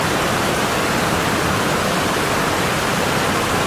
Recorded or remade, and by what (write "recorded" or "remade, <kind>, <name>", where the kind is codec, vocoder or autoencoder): recorded